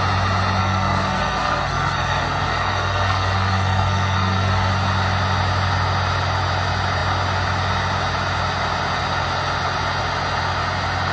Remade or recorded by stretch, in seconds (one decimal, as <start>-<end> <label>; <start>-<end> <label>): 0.0-0.6 recorded; 0.6-4.7 remade; 4.7-11.1 recorded